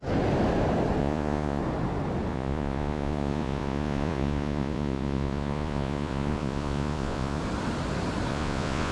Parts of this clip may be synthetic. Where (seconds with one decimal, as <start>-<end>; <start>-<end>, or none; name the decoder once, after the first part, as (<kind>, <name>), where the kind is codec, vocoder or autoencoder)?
1.0-1.6 (vocoder, Vocos); 2.3-7.4; 8.3-8.9